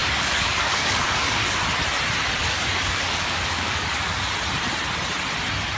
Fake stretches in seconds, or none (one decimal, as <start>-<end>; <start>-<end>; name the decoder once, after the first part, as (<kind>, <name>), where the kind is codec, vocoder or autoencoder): 0.0-1.6 (codec, DAC); 2.4-4.2